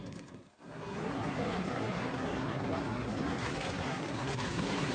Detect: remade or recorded remade